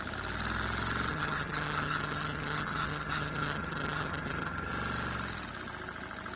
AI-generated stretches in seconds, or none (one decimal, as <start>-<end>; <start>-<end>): 1.1-4.7